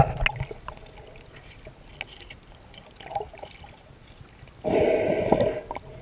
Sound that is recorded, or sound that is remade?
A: recorded